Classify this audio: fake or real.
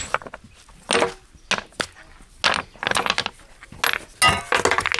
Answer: real